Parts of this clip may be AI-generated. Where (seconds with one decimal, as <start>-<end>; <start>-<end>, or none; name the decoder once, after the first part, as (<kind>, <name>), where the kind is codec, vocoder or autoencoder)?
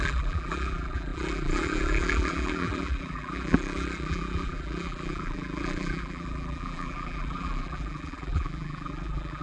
0.0-9.4 (vocoder, BigVGAN v2)